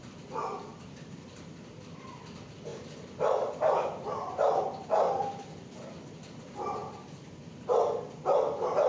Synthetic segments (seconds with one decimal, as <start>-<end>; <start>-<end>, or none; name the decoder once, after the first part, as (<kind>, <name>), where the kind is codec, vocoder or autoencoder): 0.7-2.1 (vocoder, BigVGAN v2); 2.7-6.1; 6.8-8.1